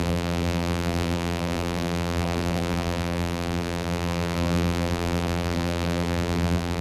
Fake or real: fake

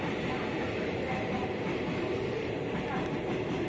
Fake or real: real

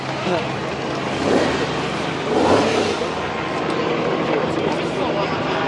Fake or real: fake